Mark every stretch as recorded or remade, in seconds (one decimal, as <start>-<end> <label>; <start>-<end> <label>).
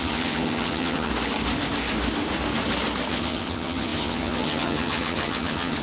0.0-1.1 remade; 1.1-3.1 recorded; 3.1-5.8 remade